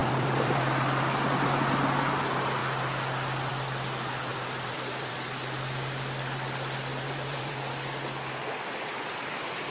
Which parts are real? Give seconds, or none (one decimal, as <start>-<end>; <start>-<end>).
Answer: 0.6-4.3; 5.1-6.9; 7.7-9.7

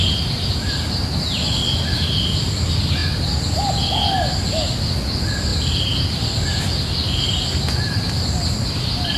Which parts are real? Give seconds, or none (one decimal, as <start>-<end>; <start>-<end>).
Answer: 0.0-9.2